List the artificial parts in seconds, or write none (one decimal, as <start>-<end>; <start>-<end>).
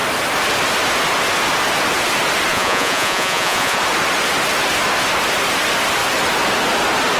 2.5-3.8